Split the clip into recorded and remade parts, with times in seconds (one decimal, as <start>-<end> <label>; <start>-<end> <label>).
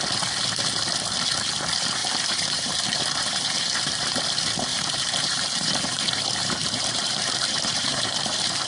0.0-2.0 recorded; 2.0-4.2 remade; 4.2-4.7 recorded; 4.7-8.7 remade